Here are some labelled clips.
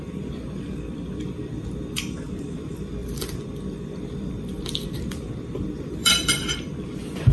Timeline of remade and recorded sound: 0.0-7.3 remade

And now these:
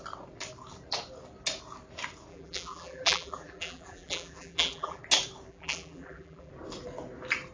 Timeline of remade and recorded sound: 0.0-2.3 recorded; 2.3-5.0 remade; 5.0-5.5 recorded; 5.5-6.5 remade; 6.5-7.5 recorded